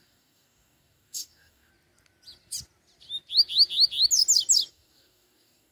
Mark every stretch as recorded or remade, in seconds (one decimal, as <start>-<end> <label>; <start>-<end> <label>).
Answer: 0.0-1.7 remade; 1.7-4.7 recorded; 4.7-5.7 remade